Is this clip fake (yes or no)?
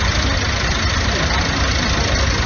no